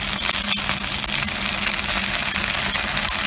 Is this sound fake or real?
real